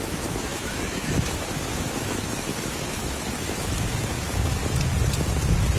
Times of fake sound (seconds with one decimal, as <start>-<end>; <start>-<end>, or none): 0.0-4.6